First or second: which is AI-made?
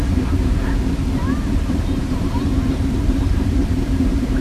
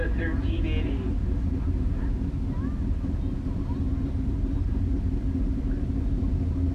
first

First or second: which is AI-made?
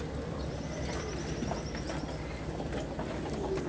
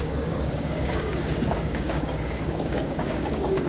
second